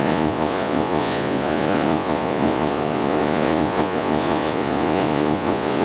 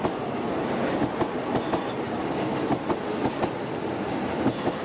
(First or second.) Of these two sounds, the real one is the second